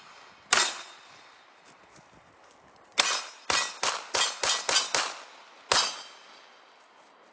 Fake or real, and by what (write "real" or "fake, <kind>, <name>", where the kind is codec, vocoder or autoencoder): real